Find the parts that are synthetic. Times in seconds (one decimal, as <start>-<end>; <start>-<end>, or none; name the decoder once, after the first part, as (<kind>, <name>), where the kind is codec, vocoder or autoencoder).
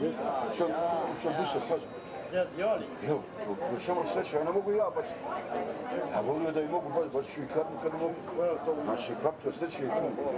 none